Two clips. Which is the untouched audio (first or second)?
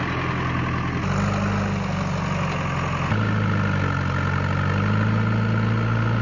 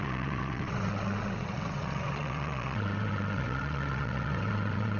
first